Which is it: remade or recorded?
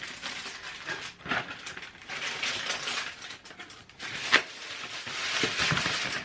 recorded